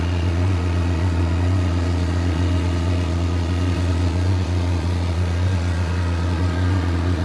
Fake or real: fake